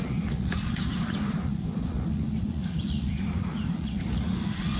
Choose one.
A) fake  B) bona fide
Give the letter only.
A